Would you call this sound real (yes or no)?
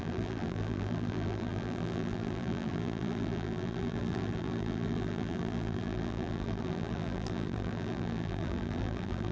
no